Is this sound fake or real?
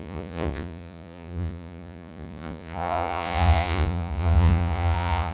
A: fake